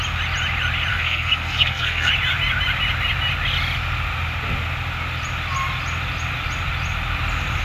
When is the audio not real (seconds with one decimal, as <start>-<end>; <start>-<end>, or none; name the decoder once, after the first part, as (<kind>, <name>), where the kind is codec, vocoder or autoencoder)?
0.9-2.1 (codec, SNAC)

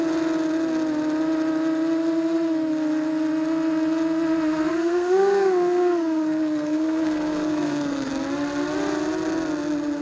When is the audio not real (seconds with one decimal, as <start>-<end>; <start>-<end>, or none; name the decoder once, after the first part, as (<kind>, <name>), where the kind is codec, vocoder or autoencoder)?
4.7-8.1 (codec, SNAC)

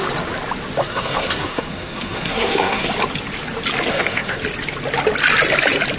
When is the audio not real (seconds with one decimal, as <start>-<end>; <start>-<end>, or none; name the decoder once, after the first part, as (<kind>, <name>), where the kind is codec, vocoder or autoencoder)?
0.8-2.9 (codec, SNAC); 3.9-4.4

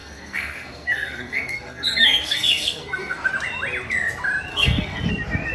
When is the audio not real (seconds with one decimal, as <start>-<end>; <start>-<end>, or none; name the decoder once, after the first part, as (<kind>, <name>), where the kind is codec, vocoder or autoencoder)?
0.0-3.3 (codec, SNAC); 4.5-5.1